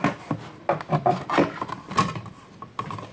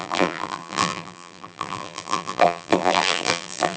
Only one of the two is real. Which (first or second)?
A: first